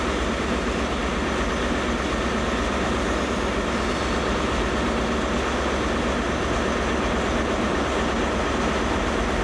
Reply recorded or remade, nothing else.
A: recorded